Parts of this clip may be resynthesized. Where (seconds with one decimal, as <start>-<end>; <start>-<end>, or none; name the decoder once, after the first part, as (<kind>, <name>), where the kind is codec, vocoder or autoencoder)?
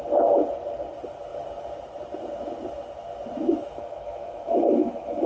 3.4-5.3 (autoencoder, DAC-VAE)